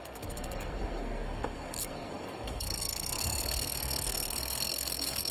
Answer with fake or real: fake